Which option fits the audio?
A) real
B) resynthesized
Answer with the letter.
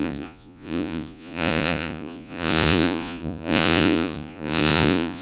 B